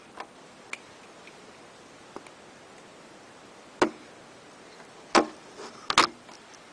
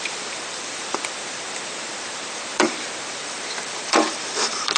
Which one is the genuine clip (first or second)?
first